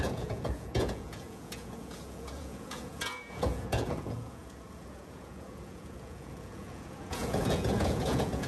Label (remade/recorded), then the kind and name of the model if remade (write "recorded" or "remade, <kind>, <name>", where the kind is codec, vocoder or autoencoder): remade, vocoder, Vocos